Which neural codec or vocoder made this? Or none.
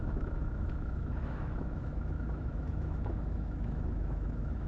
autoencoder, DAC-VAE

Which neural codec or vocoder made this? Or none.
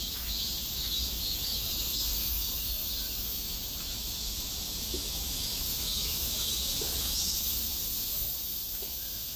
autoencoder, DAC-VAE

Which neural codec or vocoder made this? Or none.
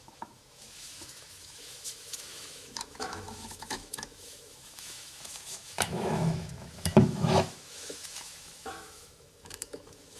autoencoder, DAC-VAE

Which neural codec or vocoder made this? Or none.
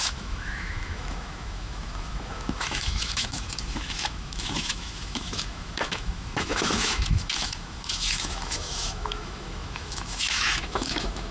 autoencoder, DAC-VAE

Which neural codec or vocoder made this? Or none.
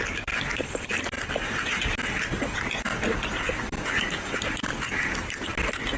none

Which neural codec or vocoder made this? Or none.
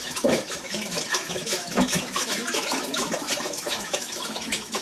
autoencoder, DAC-VAE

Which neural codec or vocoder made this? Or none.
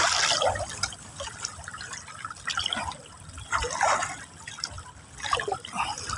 none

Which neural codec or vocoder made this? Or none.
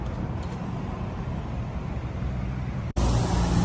none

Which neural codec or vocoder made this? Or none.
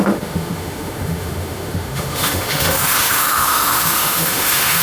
autoencoder, DAC-VAE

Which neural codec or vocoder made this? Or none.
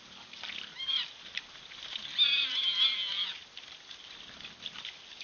none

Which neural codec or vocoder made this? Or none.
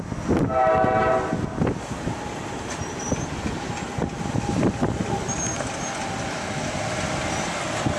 none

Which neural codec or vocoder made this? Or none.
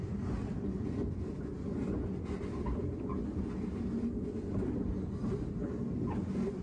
none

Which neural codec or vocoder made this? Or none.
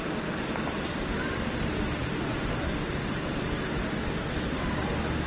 none